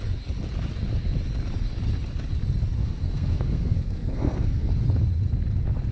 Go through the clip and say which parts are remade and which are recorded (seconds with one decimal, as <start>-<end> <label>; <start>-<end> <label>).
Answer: 0.0-2.8 recorded; 2.8-4.7 remade; 4.7-5.9 recorded